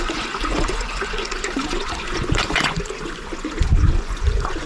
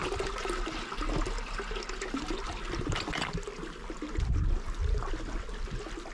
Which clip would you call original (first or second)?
second